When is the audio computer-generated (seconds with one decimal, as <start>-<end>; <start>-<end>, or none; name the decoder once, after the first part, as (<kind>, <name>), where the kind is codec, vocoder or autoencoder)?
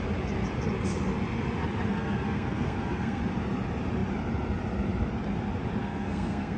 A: 1.9-3.2 (codec, SNAC); 5.8-6.6